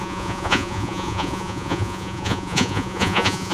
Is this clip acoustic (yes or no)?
no